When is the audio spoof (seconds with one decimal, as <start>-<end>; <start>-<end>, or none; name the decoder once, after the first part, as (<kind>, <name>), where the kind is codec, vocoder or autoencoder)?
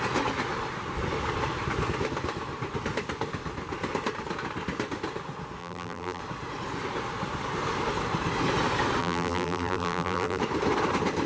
5.6-6.2 (vocoder, BigVGAN v2); 9.0-10.4